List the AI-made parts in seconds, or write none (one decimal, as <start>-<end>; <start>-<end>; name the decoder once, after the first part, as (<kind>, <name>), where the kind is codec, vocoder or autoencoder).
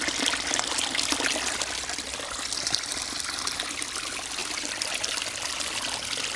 none